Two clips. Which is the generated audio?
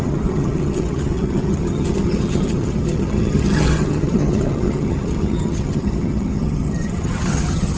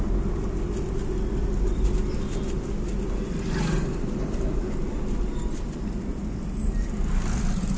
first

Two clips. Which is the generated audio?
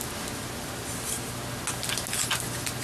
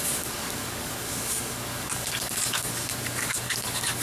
second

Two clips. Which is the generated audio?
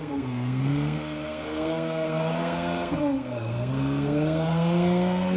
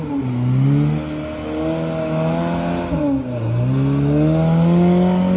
first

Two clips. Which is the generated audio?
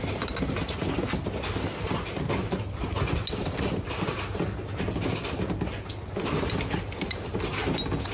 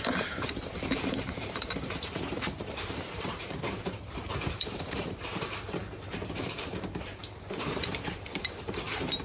second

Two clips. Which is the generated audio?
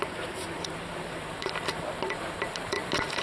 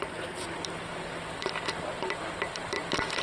first